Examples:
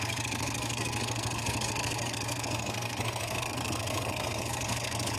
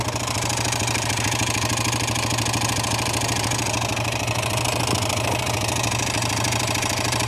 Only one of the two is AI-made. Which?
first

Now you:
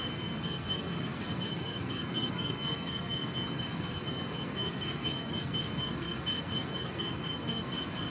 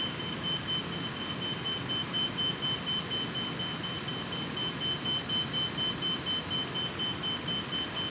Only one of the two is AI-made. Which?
first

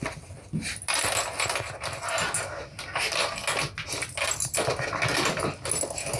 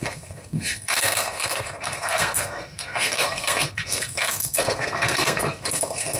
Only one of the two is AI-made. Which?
second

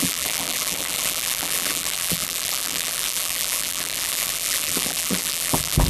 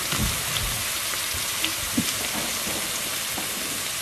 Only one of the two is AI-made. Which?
first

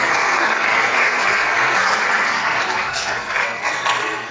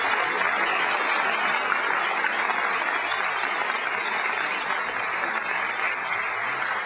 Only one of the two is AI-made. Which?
first